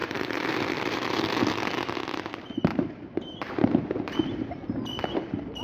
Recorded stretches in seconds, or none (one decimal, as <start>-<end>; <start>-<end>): 1.3-2.7; 4.5-5.6